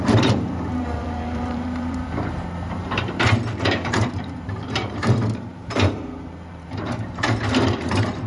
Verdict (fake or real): fake